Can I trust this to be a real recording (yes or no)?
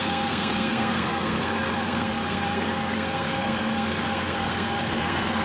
no